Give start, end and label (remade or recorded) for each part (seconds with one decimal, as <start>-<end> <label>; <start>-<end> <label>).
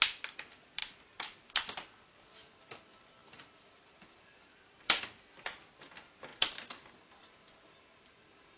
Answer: 0.0-3.2 recorded; 3.2-5.0 remade; 5.0-8.6 recorded